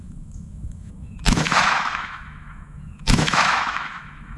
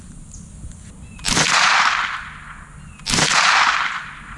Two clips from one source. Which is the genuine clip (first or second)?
second